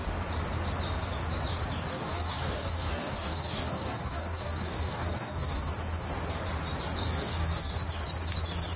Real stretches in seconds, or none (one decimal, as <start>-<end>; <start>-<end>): 0.0-1.9; 5.7-7.0; 7.7-8.8

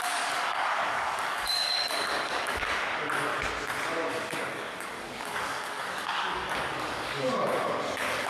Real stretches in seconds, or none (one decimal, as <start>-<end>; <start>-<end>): 3.3-4.1

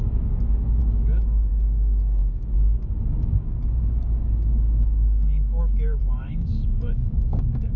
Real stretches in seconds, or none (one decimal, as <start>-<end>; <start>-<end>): none

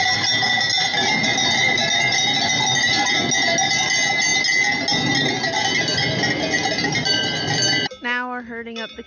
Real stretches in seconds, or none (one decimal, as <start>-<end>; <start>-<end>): 0.0-9.1

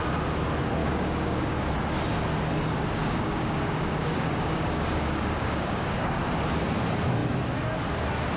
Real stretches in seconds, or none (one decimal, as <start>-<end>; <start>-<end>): 0.0-0.8; 1.7-3.0; 6.2-8.4

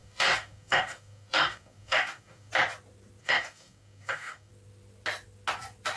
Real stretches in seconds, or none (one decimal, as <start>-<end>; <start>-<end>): 2.5-3.2; 4.5-6.0